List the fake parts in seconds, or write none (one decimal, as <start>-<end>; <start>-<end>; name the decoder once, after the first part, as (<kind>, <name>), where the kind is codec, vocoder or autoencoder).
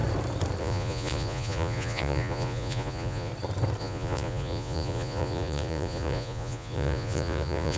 0.6-3.3 (vocoder, Vocos); 3.8-7.8